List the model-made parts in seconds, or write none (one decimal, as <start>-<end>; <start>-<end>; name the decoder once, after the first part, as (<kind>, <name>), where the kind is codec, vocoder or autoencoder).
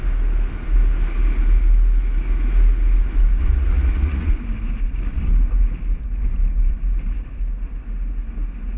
3.4-4.3 (vocoder, Vocos)